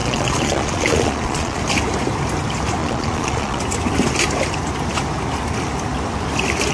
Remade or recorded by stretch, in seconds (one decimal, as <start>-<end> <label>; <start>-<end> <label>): 0.0-1.6 remade; 1.6-2.8 recorded; 2.8-3.6 remade; 3.6-6.7 recorded